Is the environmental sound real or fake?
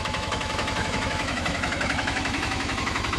fake